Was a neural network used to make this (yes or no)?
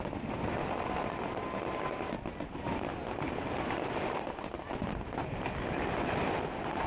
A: no